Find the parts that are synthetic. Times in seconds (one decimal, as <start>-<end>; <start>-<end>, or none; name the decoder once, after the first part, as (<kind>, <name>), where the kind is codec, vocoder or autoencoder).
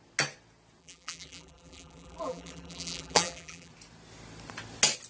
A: 0.8-3.7 (vocoder, BigVGAN v2)